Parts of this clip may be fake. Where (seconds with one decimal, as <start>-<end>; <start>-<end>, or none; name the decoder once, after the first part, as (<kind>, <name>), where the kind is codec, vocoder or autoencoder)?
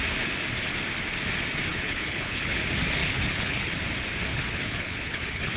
1.7-2.6 (codec, HILCodec); 3.0-3.7; 4.3-5.6